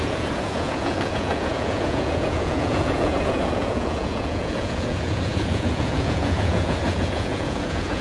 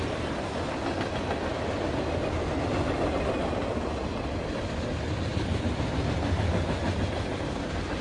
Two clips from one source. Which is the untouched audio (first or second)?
second